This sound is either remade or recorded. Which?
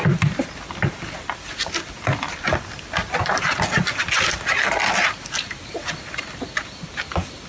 remade